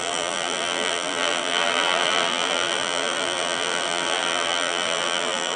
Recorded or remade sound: remade